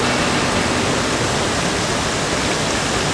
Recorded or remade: recorded